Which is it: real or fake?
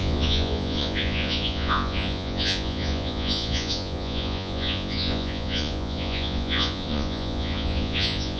fake